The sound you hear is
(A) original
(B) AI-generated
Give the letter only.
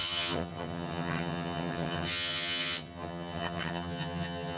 B